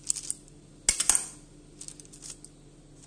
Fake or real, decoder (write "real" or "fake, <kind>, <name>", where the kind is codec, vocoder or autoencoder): real